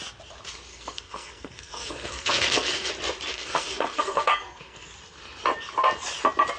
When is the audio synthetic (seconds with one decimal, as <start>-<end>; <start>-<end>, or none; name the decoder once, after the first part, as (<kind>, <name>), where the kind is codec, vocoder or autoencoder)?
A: 0.7-2.9 (codec, SNAC); 3.3-4.9